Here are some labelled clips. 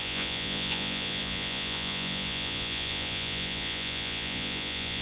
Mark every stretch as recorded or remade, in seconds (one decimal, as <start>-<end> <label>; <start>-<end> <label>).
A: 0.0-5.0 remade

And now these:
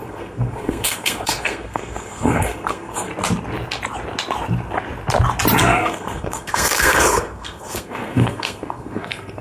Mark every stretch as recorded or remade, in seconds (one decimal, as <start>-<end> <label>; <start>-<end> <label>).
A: 0.0-3.1 remade; 3.1-5.6 recorded; 5.6-9.4 remade

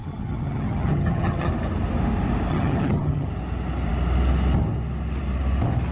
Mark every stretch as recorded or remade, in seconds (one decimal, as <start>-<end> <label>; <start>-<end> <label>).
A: 0.0-1.5 remade; 1.5-2.5 recorded; 2.5-3.3 remade; 3.3-5.9 recorded